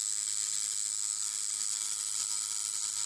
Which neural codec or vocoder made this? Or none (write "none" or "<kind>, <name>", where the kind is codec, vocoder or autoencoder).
autoencoder, DAC-VAE